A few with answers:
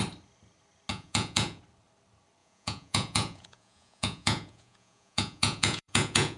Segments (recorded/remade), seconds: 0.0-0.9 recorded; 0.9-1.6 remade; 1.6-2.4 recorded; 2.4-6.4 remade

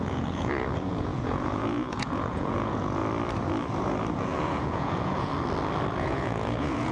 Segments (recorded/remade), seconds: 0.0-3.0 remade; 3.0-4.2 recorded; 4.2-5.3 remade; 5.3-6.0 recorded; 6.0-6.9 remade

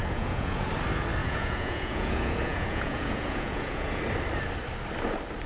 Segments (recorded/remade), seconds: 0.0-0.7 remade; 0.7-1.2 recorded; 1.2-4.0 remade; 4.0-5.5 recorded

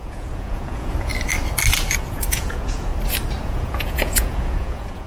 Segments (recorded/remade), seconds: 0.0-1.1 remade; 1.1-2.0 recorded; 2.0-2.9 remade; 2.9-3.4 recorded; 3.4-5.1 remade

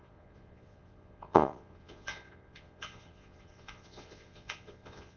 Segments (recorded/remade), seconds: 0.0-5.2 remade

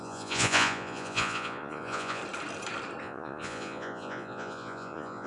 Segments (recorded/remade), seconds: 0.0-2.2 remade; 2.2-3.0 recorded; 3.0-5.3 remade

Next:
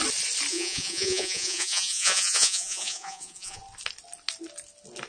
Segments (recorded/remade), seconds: 0.0-0.5 recorded; 0.5-3.6 remade; 3.6-5.1 recorded

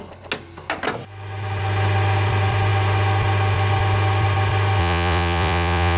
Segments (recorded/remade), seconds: 0.0-4.8 recorded; 4.8-6.0 remade